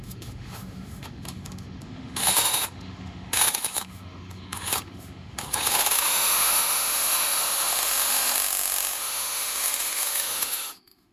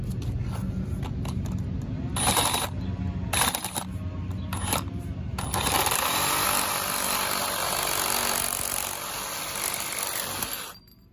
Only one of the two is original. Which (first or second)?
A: second